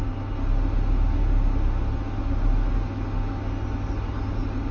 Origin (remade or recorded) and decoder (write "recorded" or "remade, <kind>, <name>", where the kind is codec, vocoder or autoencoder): recorded